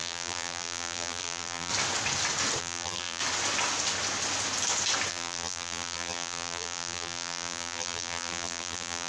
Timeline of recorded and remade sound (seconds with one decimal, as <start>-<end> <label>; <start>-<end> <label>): 0.0-1.7 remade; 1.7-2.6 recorded; 2.6-3.2 remade; 3.2-5.1 recorded; 5.1-9.1 remade